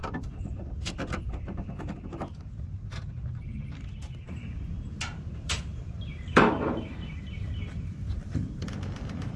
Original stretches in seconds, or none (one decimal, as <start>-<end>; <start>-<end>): none